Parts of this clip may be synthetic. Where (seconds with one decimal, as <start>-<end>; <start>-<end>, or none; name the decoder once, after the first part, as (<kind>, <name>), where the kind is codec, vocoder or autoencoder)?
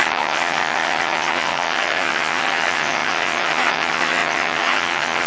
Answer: 0.0-5.3 (vocoder, HiFi-GAN)